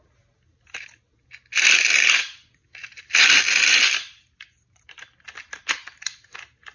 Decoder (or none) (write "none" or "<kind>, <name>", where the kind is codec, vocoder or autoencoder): none